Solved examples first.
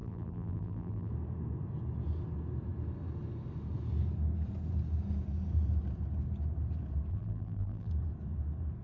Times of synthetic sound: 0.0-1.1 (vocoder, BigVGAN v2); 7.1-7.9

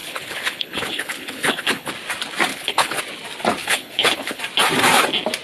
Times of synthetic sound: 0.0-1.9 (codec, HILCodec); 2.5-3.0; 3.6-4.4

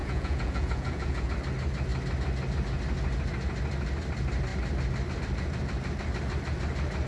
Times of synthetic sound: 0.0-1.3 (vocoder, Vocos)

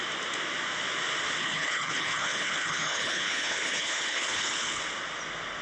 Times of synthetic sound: 1.4-4.8 (codec, HILCodec)